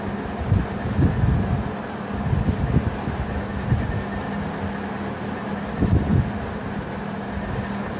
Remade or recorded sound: recorded